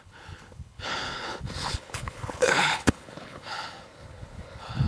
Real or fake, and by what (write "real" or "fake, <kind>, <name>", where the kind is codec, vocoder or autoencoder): fake, codec, HILCodec